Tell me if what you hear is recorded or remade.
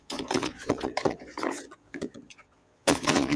remade